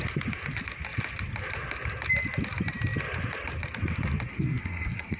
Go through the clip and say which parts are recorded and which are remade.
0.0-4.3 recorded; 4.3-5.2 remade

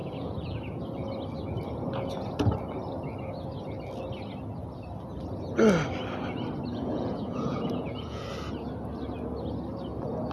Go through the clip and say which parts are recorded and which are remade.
0.0-0.8 remade; 0.8-6.7 recorded; 6.7-8.3 remade; 8.3-10.3 recorded

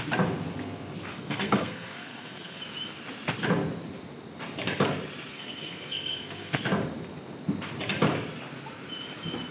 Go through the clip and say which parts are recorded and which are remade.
0.0-1.1 recorded; 1.1-2.6 remade; 2.6-5.3 recorded; 5.3-6.6 remade; 6.6-9.5 recorded

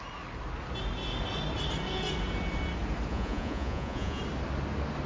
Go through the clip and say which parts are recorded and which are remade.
0.0-3.1 recorded; 3.1-4.2 remade; 4.2-5.1 recorded

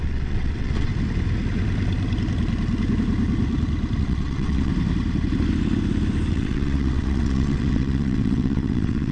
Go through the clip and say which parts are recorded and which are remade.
0.0-0.9 remade; 0.9-4.0 recorded; 4.0-4.7 remade; 4.7-6.3 recorded; 6.3-9.1 remade

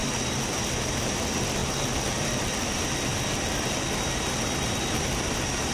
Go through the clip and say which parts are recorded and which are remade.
0.0-5.7 recorded